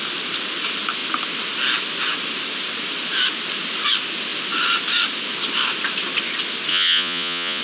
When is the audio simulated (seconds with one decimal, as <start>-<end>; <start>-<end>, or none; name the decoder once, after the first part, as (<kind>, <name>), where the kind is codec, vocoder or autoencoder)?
6.7-7.6 (vocoder, Vocos)